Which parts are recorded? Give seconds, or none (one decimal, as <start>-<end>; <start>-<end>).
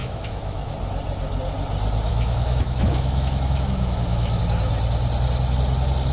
0.7-2.1; 4.4-6.1